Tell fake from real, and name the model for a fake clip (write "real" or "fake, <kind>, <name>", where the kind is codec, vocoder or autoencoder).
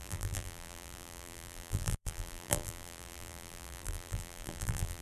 fake, vocoder, BigVGAN v2